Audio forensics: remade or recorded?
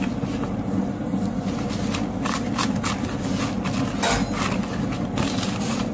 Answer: recorded